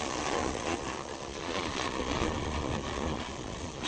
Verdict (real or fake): fake